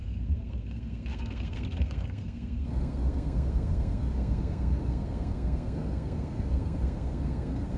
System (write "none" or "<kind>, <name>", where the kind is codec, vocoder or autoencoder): codec, SNAC